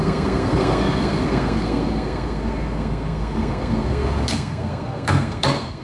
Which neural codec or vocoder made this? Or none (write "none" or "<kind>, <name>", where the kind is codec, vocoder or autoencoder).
codec, SNAC